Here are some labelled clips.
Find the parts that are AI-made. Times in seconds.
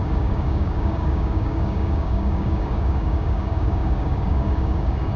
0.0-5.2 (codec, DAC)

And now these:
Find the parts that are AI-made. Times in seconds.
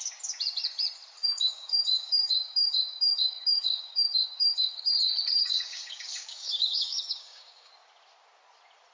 1.2-4.9 (codec, DAC); 5.4-7.7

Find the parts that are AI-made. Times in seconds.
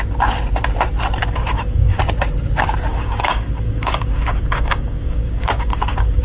1.2-2.0 (codec, DAC); 2.9-6.2